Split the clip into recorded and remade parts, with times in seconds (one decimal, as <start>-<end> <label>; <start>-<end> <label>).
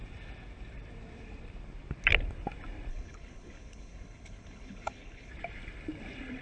0.0-2.9 recorded; 2.9-5.3 remade; 5.3-6.4 recorded